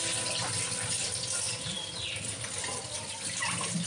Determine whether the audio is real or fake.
real